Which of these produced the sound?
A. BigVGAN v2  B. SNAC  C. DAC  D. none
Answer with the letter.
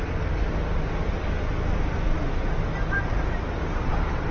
D